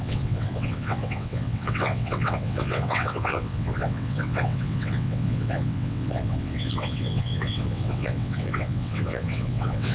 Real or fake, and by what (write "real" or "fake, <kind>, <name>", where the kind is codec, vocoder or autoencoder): fake, vocoder, WaveNeXt